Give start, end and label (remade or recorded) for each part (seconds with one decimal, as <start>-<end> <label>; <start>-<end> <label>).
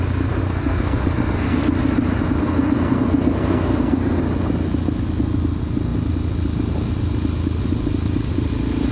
0.0-0.4 recorded; 0.4-1.6 remade; 1.6-2.4 recorded; 2.4-4.2 remade; 4.2-8.9 recorded